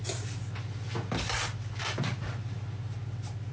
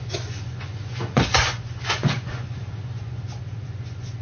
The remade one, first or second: second